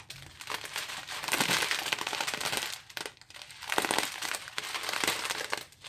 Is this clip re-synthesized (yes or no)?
no